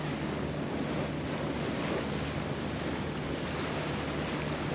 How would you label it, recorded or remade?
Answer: recorded